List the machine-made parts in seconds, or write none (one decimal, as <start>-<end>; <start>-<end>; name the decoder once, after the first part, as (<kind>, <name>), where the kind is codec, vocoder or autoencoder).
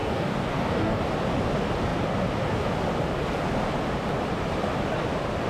0.0-1.0 (codec, DAC)